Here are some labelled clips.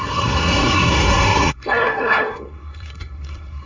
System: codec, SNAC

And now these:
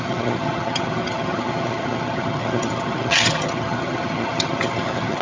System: vocoder, HiFi-GAN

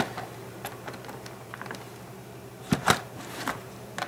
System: vocoder, BigVGAN v2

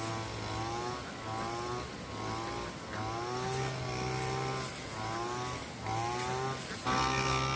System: none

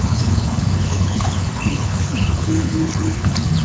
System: codec, HILCodec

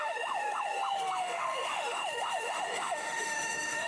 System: autoencoder, DAC-VAE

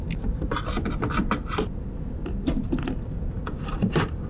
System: none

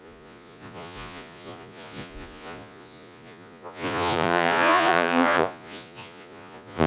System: vocoder, Vocos